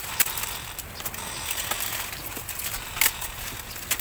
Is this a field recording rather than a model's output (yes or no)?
no